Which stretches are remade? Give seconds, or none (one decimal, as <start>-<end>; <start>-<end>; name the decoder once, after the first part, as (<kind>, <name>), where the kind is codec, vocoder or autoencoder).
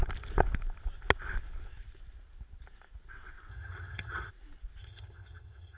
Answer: 3.5-4.3 (vocoder, HiFi-GAN); 4.8-5.8